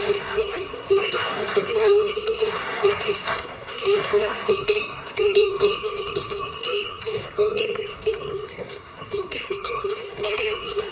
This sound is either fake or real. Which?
fake